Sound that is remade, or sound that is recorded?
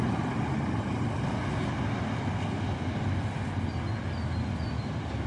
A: recorded